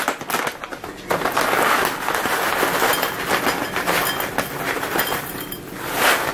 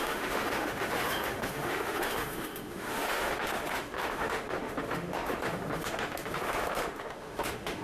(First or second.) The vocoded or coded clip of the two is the second